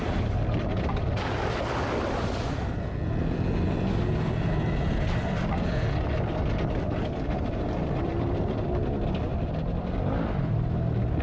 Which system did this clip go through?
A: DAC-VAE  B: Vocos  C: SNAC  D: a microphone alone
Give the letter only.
D